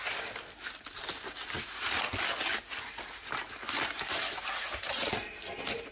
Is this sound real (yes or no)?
yes